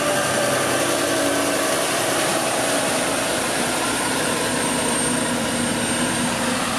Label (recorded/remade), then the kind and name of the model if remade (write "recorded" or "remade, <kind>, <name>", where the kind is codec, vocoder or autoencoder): remade, vocoder, BigVGAN v2